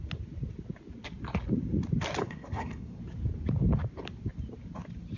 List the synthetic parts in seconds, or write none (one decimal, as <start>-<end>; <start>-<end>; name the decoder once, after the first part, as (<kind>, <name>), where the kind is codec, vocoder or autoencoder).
2.2-3.0 (codec, SNAC)